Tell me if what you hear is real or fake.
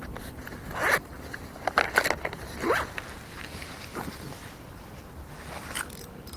fake